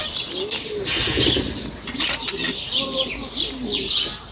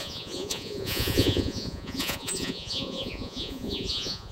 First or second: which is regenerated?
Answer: second